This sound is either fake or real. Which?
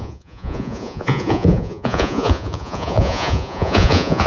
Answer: fake